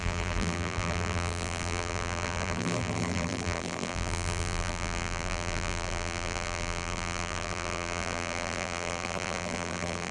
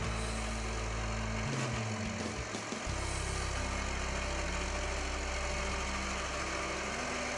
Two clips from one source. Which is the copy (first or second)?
first